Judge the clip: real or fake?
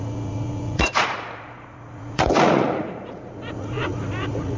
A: fake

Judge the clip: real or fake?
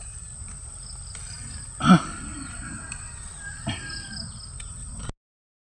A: real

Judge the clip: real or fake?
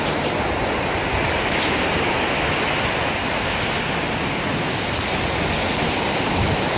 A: real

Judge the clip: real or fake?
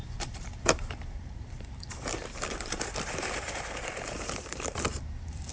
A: fake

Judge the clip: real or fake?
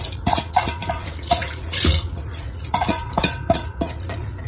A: fake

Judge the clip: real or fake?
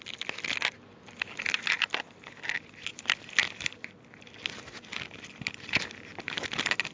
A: real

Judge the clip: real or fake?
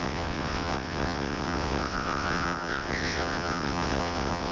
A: fake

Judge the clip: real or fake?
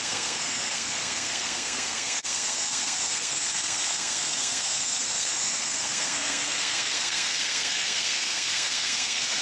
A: fake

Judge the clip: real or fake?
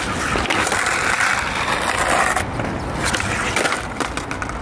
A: real